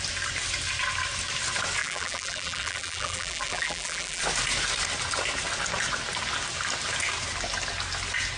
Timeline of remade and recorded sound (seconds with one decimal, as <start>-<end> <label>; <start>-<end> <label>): 0.0-1.8 recorded; 1.8-4.2 remade; 4.2-8.4 recorded